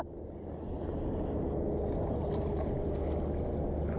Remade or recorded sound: recorded